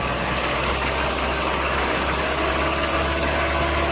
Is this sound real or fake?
fake